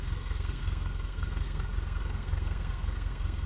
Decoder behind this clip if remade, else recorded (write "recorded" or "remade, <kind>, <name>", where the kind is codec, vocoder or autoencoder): remade, codec, SNAC